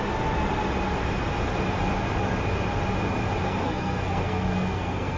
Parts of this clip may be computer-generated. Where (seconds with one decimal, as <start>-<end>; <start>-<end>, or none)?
3.4-5.2